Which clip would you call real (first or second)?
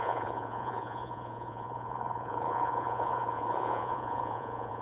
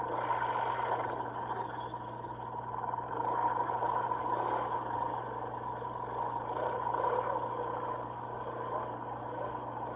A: second